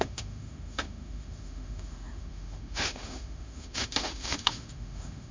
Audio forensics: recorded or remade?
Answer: remade